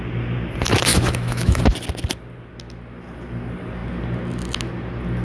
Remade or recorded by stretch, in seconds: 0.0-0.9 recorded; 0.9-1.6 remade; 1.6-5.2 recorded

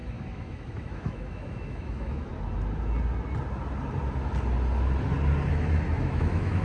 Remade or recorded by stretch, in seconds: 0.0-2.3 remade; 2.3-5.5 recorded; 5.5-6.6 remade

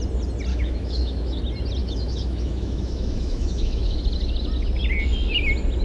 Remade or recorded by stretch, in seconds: 0.0-0.5 recorded; 0.5-1.4 remade; 1.4-1.8 recorded; 1.8-4.0 remade; 4.0-5.8 recorded